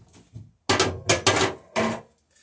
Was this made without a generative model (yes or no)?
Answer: yes